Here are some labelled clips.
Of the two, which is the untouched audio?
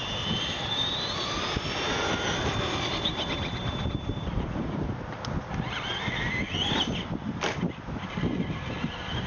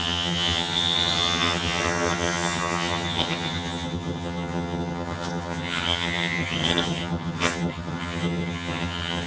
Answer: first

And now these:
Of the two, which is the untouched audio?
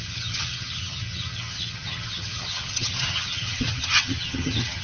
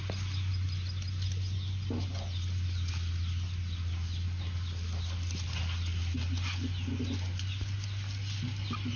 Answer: second